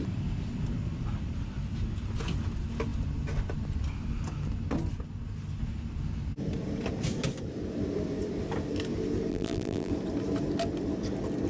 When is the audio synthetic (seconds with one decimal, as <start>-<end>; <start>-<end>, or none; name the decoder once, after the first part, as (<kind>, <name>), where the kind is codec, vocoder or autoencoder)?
9.3-9.9 (vocoder, BigVGAN v2)